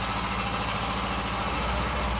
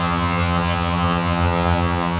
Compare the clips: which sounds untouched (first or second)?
first